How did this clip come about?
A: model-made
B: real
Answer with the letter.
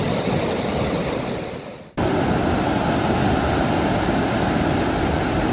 B